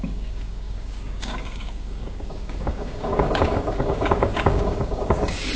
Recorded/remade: remade